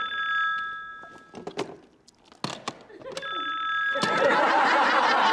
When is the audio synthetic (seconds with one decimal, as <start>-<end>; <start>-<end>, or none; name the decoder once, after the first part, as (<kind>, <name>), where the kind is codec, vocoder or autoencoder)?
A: none

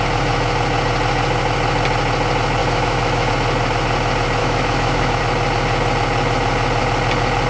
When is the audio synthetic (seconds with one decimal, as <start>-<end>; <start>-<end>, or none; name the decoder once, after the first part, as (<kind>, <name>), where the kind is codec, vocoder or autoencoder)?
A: 2.6-3.3 (autoencoder, DAC-VAE); 4.4-5.2

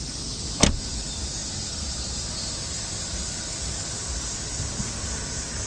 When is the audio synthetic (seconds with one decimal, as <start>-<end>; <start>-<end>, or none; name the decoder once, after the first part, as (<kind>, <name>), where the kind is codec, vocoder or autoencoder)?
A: none

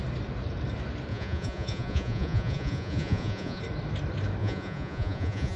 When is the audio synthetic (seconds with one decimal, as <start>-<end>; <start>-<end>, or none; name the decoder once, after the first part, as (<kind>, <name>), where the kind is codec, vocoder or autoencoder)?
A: 1.1-3.6 (vocoder, Vocos); 4.4-5.6